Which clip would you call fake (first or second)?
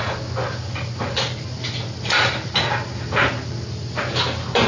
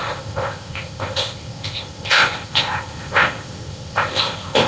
second